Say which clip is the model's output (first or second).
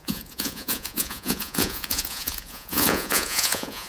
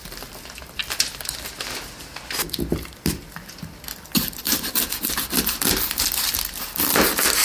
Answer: first